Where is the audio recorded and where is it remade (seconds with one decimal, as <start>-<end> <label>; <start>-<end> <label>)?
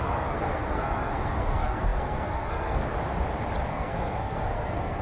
0.0-2.9 remade; 2.9-3.7 recorded; 3.7-5.0 remade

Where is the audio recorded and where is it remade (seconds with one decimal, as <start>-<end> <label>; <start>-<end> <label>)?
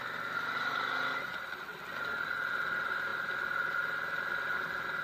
0.0-5.0 recorded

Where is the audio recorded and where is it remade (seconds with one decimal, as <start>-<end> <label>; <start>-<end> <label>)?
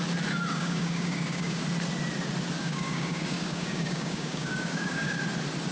0.0-0.5 recorded; 0.5-1.6 remade; 1.6-2.6 recorded; 2.6-5.2 remade; 5.2-5.7 recorded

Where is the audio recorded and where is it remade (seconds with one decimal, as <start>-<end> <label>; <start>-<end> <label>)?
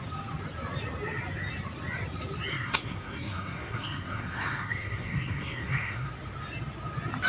0.0-2.5 recorded; 2.5-6.1 remade; 6.1-7.3 recorded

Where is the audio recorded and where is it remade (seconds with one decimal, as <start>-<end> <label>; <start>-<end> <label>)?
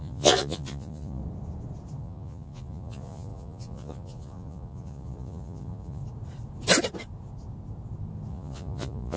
0.0-1.2 remade; 1.2-2.0 recorded; 2.0-6.0 remade; 6.0-8.3 recorded; 8.3-9.2 remade